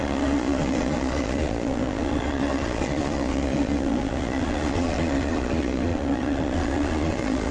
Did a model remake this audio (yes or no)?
yes